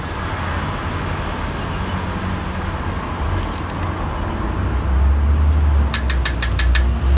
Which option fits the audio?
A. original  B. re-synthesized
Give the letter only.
A